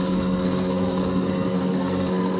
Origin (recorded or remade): remade